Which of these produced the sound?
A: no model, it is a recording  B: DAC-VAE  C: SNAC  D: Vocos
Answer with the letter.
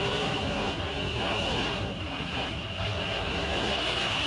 C